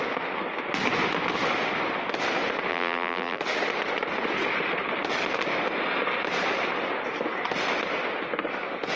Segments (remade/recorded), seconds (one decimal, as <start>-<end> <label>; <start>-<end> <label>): 0.0-2.7 recorded; 2.7-3.4 remade; 3.4-9.0 recorded